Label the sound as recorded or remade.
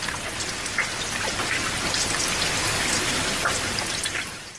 recorded